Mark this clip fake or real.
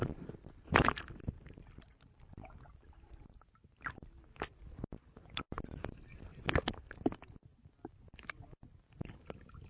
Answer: real